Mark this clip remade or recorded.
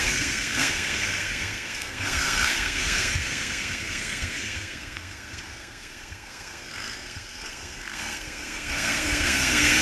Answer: remade